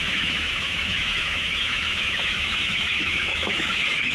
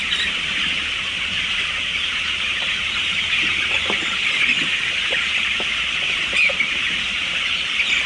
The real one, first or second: second